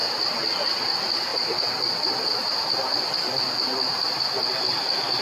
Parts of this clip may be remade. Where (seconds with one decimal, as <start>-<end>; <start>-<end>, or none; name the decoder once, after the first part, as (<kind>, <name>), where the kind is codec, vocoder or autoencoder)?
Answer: none